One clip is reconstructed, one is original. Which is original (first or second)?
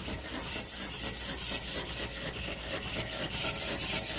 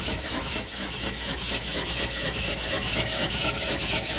first